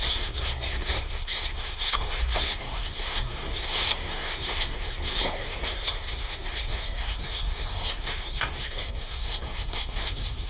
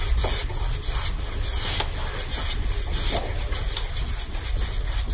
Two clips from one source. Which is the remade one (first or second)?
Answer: first